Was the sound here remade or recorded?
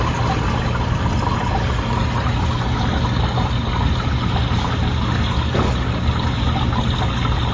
recorded